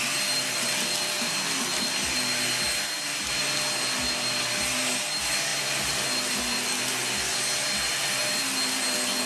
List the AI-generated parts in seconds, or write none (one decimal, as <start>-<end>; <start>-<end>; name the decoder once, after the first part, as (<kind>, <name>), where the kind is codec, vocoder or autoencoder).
none